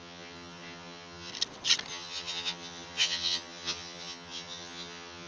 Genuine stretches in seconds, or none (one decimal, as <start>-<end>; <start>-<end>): 1.3-1.9